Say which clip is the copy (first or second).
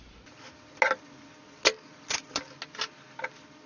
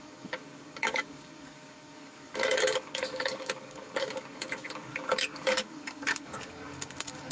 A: second